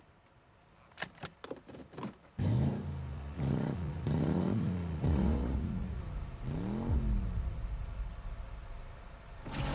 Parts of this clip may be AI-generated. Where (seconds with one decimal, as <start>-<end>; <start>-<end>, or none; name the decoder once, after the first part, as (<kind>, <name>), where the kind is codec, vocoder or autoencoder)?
3.1-6.0 (vocoder, Vocos)